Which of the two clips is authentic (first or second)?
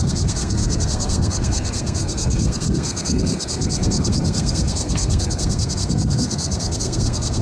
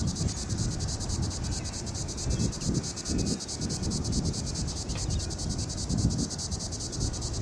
second